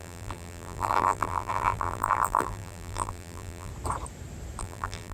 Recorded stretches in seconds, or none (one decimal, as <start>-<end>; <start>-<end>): 3.7-4.6